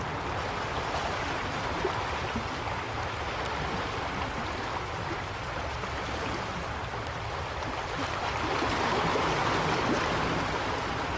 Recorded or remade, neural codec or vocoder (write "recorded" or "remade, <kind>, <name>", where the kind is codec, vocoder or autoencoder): recorded